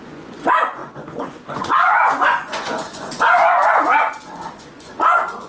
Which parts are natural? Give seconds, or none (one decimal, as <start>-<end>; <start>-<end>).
none